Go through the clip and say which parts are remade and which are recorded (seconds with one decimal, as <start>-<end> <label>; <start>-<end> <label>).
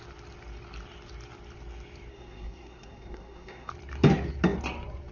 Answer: 0.0-2.1 recorded; 2.1-3.7 remade; 3.7-5.1 recorded